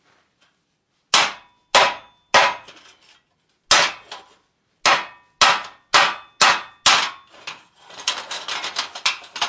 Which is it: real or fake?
real